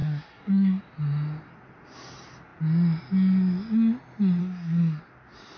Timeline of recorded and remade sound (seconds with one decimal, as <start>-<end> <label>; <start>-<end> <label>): 0.0-0.8 remade; 0.8-4.4 recorded; 4.4-5.0 remade; 5.0-5.6 recorded